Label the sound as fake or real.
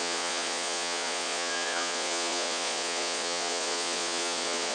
fake